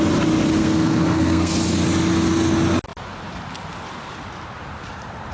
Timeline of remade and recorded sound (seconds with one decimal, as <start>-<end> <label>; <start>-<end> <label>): 0.0-0.6 recorded; 0.6-1.5 remade; 1.5-5.3 recorded